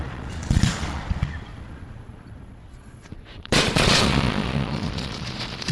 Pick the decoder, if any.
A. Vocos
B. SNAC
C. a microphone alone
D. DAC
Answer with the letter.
A